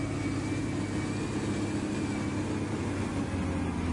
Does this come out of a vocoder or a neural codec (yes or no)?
no